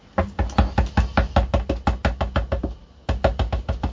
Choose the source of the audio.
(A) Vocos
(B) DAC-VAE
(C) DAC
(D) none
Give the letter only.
D